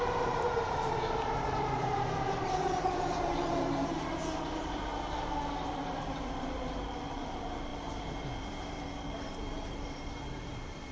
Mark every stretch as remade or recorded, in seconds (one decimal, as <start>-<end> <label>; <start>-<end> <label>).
0.0-4.9 remade; 4.9-5.7 recorded; 5.7-7.7 remade; 7.7-8.4 recorded; 8.4-10.9 remade